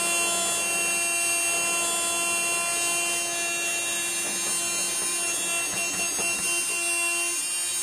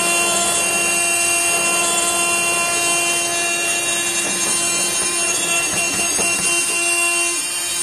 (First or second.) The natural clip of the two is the first